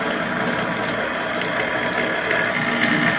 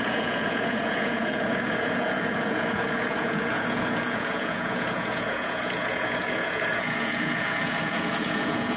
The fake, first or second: second